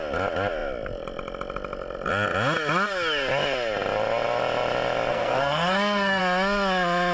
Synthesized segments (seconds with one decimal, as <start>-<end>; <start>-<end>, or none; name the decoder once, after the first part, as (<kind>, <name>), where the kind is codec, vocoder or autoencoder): 5.1-6.2 (codec, SNAC)